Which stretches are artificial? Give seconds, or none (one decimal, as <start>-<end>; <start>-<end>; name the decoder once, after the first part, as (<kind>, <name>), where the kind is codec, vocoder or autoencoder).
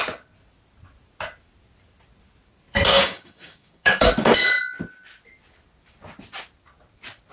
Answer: 2.9-4.1 (codec, DAC)